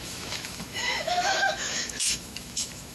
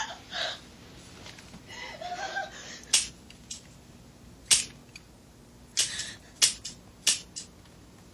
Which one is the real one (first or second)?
second